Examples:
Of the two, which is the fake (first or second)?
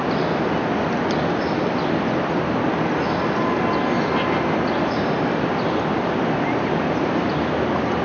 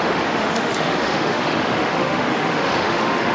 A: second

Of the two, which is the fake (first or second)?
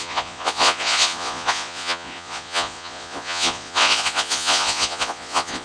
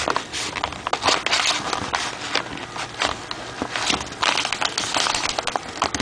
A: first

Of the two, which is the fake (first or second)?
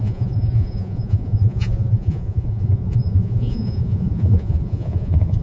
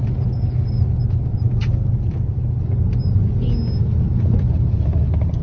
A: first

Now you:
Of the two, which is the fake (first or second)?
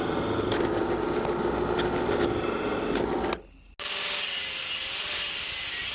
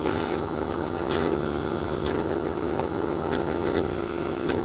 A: second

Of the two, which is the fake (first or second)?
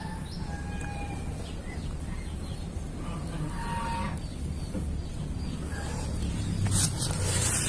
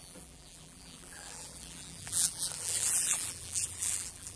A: second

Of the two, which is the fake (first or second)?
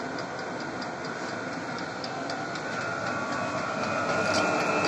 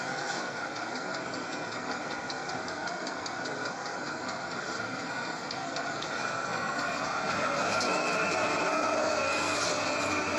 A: second